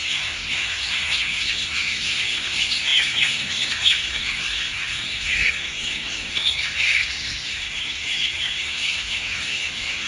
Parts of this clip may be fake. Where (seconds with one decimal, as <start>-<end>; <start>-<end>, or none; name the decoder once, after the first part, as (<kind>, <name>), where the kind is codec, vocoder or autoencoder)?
0.0-10.1 (codec, SNAC)